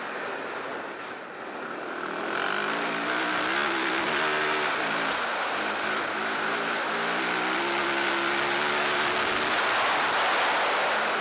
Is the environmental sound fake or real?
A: real